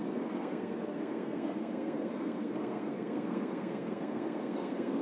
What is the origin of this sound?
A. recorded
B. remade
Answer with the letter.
B